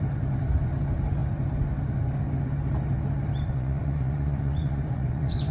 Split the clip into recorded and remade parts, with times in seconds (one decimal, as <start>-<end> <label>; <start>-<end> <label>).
0.0-3.5 recorded; 3.5-5.5 remade